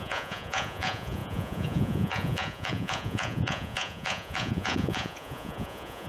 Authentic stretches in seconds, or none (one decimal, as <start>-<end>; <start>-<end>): none

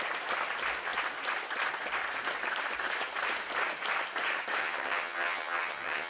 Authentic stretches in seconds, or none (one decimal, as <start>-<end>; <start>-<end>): 0.0-4.6

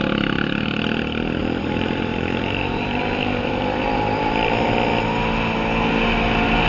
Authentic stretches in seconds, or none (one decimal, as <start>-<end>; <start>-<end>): 0.0-1.4; 4.7-6.7